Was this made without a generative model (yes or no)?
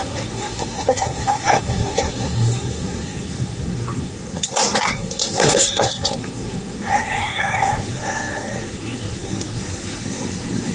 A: no